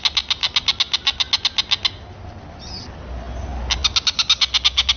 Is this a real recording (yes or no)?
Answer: yes